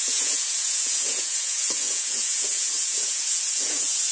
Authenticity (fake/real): fake